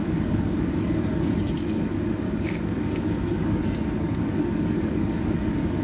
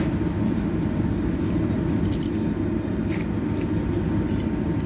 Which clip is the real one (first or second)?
second